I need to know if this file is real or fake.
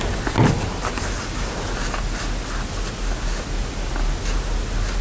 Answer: real